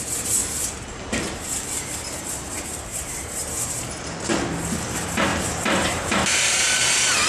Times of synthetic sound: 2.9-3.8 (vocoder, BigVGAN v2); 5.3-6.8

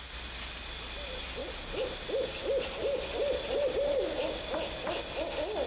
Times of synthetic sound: none